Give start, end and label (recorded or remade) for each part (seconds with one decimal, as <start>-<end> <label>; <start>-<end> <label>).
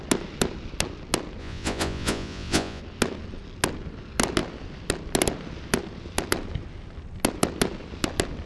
0.0-1.4 recorded; 1.4-2.8 remade; 2.8-8.5 recorded